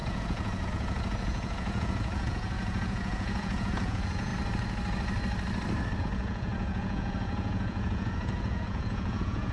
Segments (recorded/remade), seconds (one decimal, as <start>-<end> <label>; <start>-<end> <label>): 0.0-4.3 remade; 4.3-6.0 recorded; 6.0-9.5 remade